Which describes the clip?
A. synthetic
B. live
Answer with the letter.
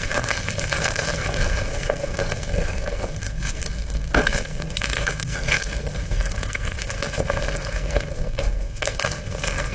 A